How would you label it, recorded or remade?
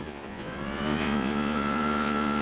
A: remade